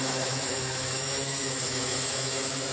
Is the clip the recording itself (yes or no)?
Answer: no